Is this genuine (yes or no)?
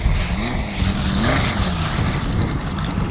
yes